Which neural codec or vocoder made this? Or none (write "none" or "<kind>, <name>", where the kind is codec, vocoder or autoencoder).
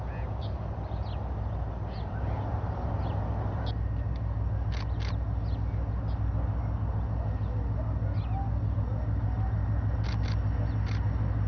none